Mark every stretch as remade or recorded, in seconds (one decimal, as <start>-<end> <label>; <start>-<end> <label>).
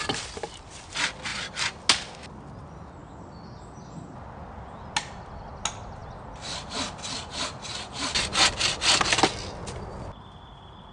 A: 0.0-10.9 recorded